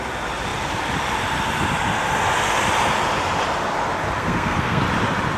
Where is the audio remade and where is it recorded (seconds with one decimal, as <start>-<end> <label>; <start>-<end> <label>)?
0.0-4.2 recorded; 4.2-4.8 remade; 4.8-5.4 recorded